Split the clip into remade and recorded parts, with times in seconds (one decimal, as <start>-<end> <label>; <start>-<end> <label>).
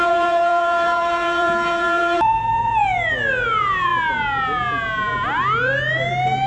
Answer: 0.0-3.9 remade; 3.9-6.5 recorded